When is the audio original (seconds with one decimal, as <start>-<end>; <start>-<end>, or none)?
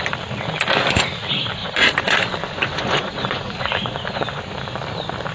0.0-1.6; 4.4-5.3